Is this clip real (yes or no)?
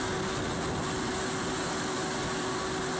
yes